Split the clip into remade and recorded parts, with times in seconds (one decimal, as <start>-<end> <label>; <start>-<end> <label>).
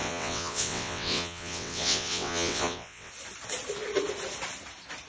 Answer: 0.0-3.1 remade; 3.1-5.1 recorded